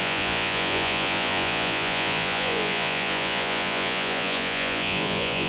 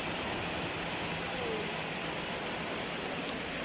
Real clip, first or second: second